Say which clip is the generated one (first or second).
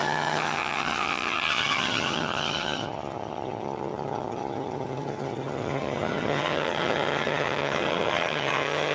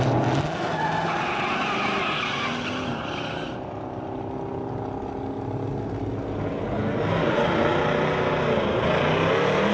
first